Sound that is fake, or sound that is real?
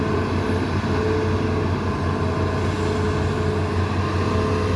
real